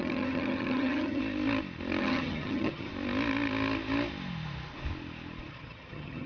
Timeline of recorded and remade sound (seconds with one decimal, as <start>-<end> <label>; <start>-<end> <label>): 0.0-1.2 remade; 1.2-2.0 recorded; 2.0-2.9 remade; 2.9-5.5 recorded; 5.5-6.3 remade